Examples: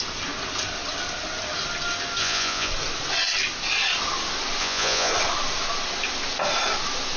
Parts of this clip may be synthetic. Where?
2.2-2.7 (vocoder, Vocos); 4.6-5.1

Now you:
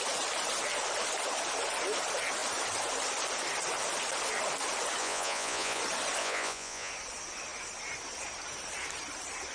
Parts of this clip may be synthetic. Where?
5.0-5.8 (vocoder, Vocos); 6.2-6.9

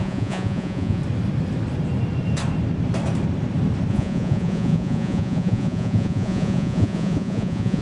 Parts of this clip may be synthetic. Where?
0.0-1.0 (vocoder, Vocos); 3.9-7.8

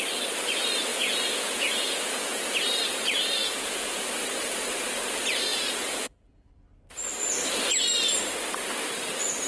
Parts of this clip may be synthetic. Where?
0.9-2.6 (vocoder, Vocos); 3.4-4.0; 5.5-6.5